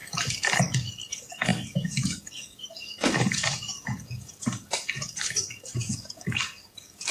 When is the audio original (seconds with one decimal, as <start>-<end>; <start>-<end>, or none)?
none